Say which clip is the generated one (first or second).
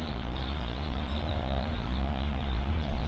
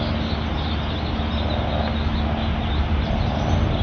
first